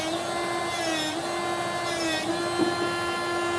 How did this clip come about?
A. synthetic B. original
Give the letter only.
B